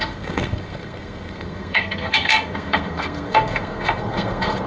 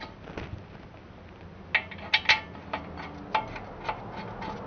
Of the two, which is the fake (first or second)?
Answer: first